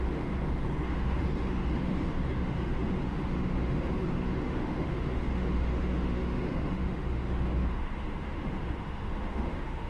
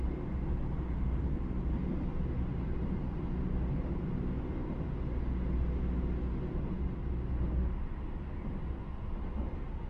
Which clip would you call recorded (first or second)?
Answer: second